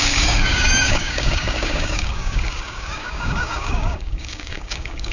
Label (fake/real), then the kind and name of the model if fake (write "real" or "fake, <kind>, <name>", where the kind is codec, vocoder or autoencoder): fake, codec, DAC